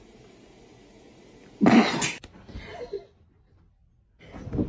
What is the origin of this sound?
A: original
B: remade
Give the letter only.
A